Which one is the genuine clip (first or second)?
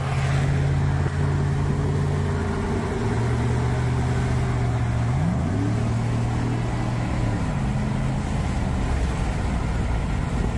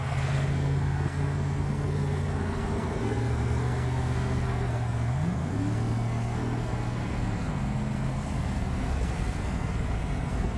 first